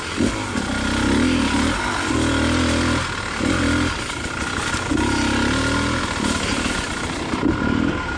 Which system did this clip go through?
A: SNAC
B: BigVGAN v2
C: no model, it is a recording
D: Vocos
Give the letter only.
C